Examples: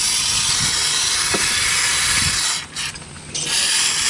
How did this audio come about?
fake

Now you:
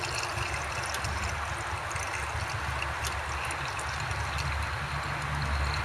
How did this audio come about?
real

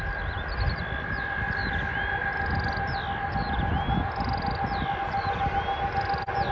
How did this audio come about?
real